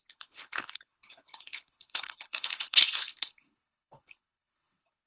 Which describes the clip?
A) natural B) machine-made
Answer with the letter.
B